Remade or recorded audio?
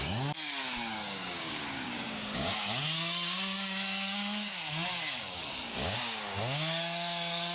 remade